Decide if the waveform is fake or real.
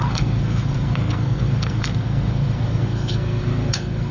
fake